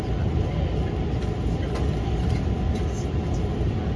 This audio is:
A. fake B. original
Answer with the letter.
A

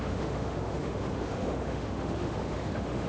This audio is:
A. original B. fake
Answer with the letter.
B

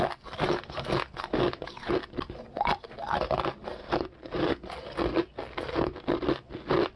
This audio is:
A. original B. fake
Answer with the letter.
A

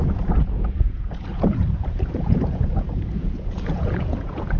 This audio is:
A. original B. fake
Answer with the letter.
B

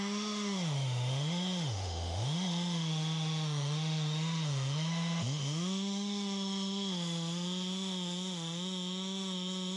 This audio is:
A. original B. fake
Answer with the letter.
B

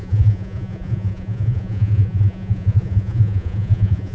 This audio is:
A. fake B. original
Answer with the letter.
A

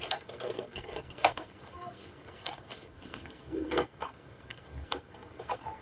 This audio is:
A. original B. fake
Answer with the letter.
B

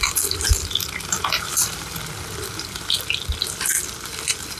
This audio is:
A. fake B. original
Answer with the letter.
B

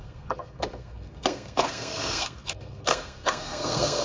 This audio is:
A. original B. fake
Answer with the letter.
B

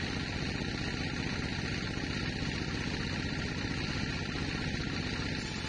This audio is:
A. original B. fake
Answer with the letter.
A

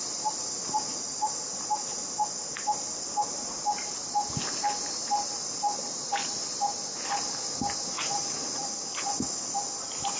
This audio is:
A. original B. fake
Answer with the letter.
A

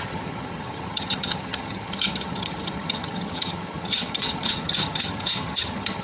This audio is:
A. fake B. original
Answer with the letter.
A